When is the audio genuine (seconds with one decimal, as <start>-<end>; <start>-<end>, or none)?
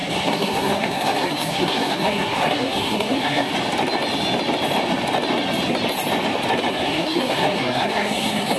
3.5-6.7